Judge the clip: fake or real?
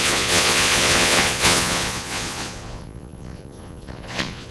fake